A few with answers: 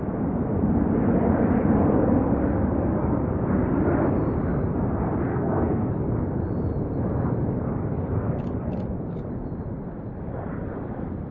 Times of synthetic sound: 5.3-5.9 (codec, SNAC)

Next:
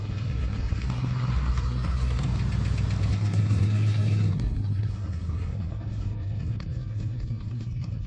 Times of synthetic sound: 0.0-2.3 (codec, SNAC); 3.1-8.1

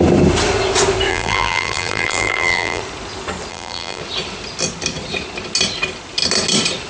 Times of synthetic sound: 1.1-2.8 (vocoder, BigVGAN v2); 3.5-4.0